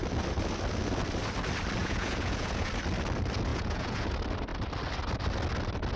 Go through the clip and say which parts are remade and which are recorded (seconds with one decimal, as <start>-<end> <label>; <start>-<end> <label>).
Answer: 0.0-1.8 recorded; 1.8-2.7 remade; 2.7-3.5 recorded; 3.5-4.1 remade; 4.1-6.0 recorded